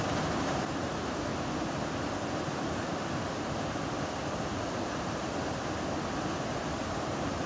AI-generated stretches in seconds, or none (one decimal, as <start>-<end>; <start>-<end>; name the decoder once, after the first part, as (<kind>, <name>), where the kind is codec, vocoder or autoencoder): 0.0-1.3 (vocoder, BigVGAN v2); 2.3-2.9; 4.2-5.2; 6.8-7.5